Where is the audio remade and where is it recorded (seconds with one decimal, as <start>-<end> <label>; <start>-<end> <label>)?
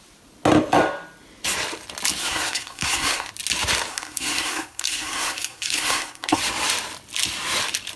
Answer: 0.0-2.2 recorded; 2.2-3.3 remade; 3.3-3.9 recorded; 3.9-6.4 remade; 6.4-8.0 recorded